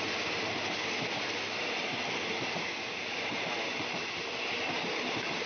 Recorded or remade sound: recorded